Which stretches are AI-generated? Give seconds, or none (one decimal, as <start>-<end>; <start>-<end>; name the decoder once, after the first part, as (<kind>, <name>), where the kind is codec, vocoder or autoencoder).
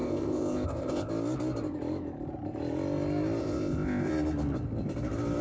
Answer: 0.0-1.1 (codec, ZipCodec); 3.4-4.1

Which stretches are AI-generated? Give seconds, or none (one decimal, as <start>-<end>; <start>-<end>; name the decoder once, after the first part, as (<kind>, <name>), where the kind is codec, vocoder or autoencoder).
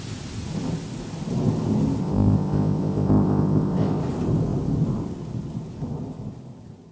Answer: 2.0-4.0 (codec, ZipCodec)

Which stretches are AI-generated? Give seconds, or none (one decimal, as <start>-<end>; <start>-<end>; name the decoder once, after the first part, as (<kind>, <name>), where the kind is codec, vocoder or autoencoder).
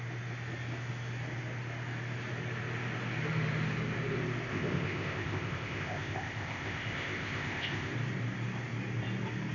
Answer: 4.5-7.9 (codec, ZipCodec)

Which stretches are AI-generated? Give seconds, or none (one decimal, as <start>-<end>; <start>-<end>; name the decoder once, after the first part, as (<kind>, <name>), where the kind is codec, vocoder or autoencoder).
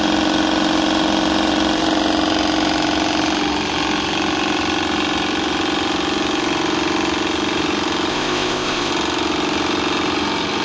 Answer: 8.1-8.9 (codec, ZipCodec)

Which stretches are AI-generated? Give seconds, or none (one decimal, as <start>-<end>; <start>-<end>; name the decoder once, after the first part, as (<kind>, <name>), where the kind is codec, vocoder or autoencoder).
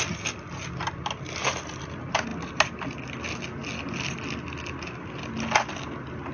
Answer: none